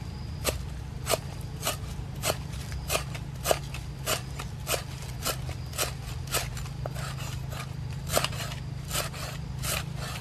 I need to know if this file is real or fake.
real